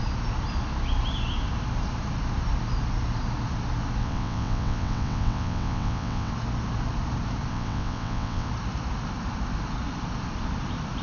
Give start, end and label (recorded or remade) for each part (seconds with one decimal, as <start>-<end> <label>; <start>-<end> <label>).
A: 0.0-4.0 recorded; 4.0-6.3 remade; 6.3-7.5 recorded; 7.5-8.5 remade; 8.5-11.0 recorded